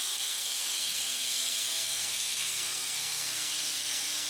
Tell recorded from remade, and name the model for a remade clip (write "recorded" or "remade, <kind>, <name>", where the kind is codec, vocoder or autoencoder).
remade, codec, SNAC